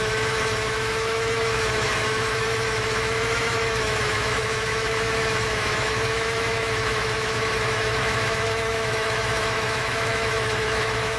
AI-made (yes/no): yes